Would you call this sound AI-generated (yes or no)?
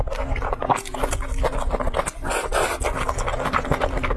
no